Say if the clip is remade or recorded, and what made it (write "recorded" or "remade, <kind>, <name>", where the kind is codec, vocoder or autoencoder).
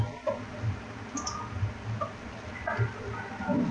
recorded